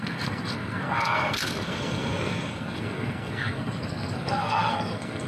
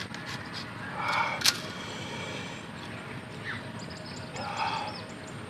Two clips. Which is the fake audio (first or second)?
first